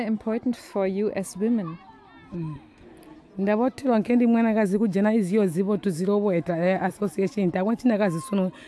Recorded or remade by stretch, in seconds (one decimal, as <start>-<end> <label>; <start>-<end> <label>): 0.0-3.8 recorded; 3.8-6.9 remade; 6.9-8.7 recorded